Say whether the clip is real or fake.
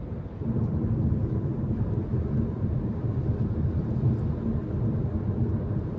real